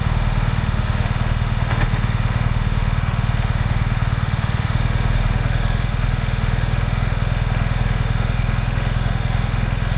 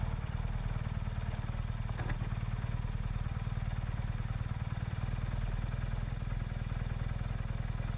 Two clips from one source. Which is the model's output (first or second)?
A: first